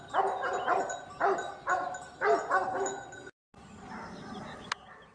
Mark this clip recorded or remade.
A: recorded